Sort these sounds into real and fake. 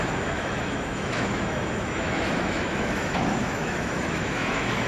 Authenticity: fake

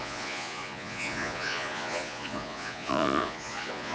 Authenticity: fake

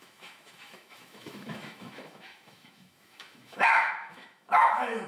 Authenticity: fake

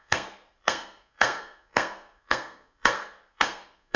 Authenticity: fake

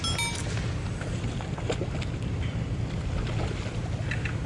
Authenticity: real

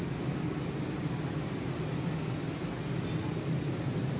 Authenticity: real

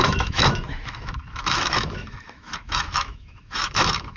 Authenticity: fake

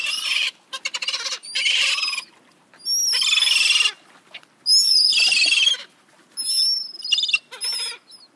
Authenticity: real